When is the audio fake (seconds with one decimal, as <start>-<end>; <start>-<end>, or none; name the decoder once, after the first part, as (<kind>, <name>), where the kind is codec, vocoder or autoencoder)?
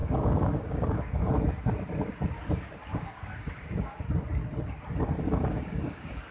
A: 0.0-1.3 (codec, DAC); 2.9-4.0; 5.3-6.3